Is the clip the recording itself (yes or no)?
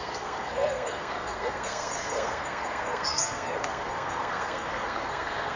no